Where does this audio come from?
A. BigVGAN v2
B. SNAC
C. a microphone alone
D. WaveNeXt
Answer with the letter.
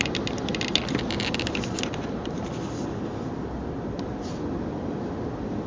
C